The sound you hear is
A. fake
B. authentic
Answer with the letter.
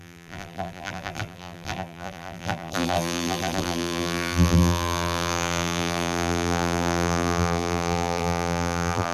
A